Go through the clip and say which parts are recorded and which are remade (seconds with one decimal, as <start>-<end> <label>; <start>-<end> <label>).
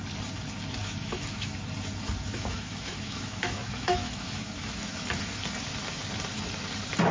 0.0-0.8 recorded; 0.8-1.6 remade; 1.6-2.3 recorded; 2.3-5.4 remade; 5.4-7.1 recorded